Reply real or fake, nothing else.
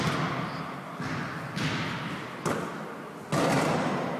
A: real